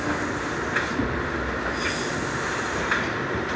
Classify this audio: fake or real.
real